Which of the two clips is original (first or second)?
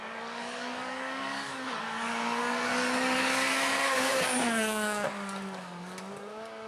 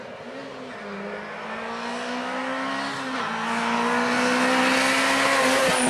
second